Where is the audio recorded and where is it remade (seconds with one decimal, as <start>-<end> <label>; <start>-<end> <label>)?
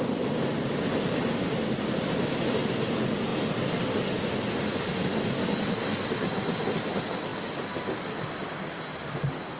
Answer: 0.0-9.6 recorded